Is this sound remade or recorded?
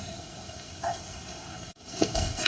remade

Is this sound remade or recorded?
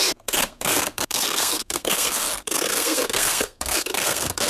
remade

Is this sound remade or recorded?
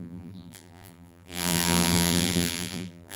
remade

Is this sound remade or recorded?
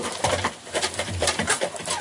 remade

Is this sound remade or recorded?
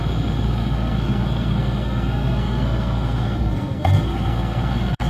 remade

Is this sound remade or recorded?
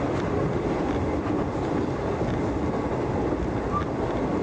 recorded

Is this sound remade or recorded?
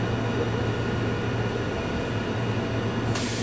recorded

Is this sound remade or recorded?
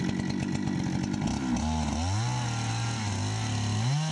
recorded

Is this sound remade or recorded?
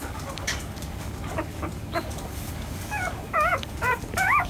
remade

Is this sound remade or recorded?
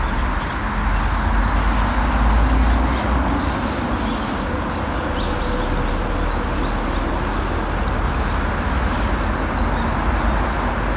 recorded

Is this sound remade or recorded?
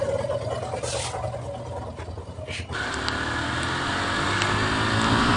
recorded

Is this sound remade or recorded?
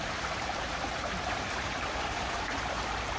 remade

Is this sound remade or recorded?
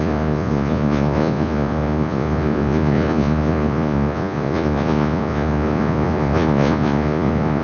remade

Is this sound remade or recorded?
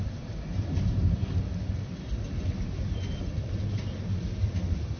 recorded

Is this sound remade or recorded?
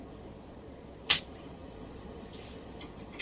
remade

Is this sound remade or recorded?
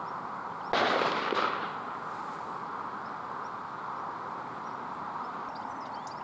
recorded